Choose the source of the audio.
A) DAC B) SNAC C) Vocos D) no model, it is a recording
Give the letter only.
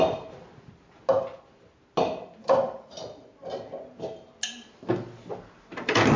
D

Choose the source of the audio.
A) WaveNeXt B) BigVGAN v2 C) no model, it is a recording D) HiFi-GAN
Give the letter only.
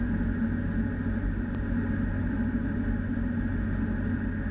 C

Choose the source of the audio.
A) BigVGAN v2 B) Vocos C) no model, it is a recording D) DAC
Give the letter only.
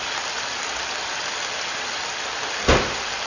A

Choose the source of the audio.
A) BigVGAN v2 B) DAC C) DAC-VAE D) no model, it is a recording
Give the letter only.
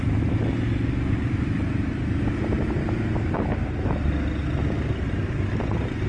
D